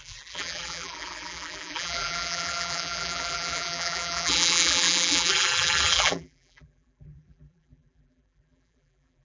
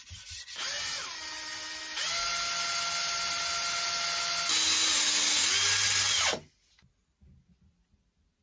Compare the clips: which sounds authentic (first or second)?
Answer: second